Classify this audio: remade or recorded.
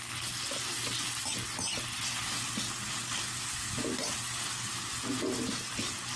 recorded